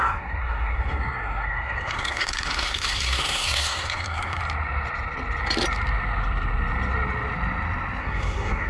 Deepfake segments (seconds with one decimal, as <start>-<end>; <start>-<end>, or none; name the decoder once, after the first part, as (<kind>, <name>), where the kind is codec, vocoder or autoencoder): 0.0-4.4 (codec, SNAC); 8.0-8.7